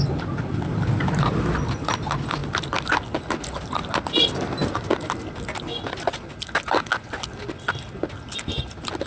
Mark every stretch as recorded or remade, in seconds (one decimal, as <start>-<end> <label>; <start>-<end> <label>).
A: 0.0-9.1 recorded